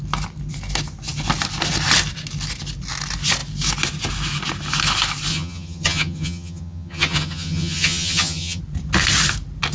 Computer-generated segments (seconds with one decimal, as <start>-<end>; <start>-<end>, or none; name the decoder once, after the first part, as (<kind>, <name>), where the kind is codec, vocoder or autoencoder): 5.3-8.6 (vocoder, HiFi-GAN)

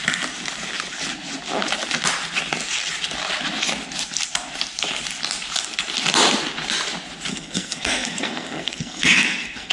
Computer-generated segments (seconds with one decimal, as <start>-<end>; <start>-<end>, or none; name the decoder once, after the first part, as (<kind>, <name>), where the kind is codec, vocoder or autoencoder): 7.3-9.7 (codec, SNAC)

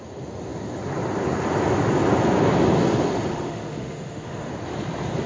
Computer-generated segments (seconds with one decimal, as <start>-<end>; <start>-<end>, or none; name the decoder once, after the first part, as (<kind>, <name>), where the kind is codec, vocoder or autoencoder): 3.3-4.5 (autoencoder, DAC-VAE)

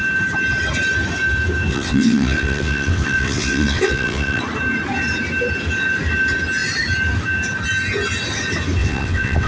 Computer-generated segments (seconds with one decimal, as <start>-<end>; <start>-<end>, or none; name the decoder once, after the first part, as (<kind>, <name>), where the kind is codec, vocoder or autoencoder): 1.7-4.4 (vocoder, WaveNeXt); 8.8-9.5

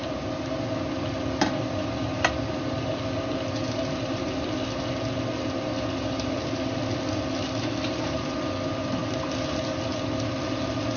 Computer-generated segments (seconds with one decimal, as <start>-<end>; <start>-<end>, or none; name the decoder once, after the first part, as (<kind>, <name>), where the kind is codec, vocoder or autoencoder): none